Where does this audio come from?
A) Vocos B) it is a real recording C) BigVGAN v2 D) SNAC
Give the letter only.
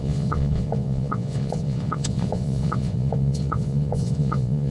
A